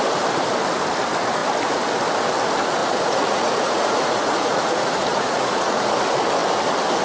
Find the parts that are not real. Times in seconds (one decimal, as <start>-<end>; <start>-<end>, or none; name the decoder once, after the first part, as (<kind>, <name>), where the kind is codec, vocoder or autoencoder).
2.8-5.9 (vocoder, Vocos)